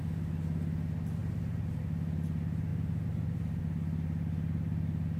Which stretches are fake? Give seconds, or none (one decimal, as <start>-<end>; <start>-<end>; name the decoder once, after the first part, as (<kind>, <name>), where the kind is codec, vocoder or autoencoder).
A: 1.2-1.8 (vocoder, BigVGAN v2); 2.7-3.6